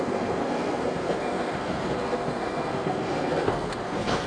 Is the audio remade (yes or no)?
yes